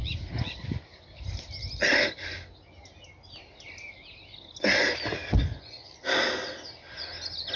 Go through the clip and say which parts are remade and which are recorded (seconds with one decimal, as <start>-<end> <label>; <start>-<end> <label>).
0.0-5.2 recorded; 5.2-5.9 remade; 5.9-7.6 recorded